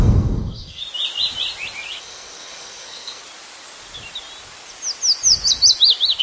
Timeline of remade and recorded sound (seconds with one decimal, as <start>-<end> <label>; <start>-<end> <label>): 0.0-0.8 remade; 0.8-2.0 recorded; 2.0-3.2 remade; 3.2-6.2 recorded